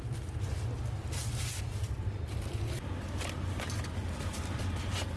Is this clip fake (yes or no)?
no